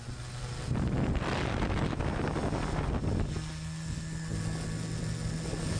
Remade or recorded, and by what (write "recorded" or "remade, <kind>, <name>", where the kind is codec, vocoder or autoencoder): recorded